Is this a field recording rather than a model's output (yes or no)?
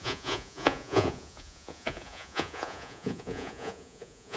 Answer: no